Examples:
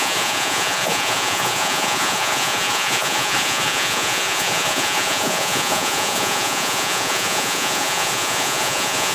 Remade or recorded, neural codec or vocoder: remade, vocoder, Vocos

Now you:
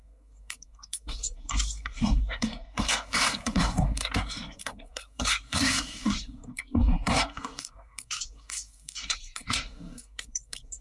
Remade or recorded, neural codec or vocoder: remade, codec, SNAC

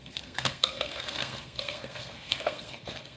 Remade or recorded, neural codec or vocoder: remade, codec, SNAC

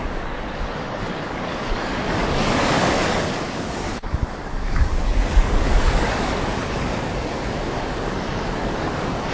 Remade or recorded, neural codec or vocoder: remade, codec, DAC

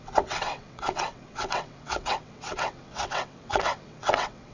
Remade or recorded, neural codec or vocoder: remade, vocoder, WaveNeXt